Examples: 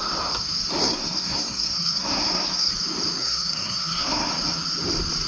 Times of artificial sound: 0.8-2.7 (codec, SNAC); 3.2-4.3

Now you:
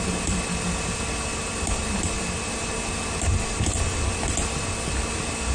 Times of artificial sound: none

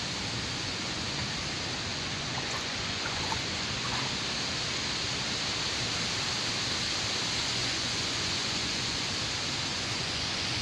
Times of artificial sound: 0.5-1.2 (vocoder, Vocos); 1.9-4.0; 7.4-9.1; 9.7-10.6